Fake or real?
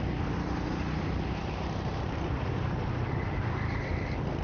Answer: real